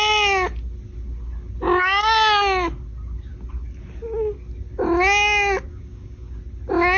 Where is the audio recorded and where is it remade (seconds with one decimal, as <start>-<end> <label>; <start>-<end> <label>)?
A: 0.0-5.7 recorded; 5.7-6.4 remade; 6.4-7.0 recorded